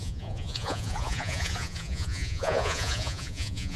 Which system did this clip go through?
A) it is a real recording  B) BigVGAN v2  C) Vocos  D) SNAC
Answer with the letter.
C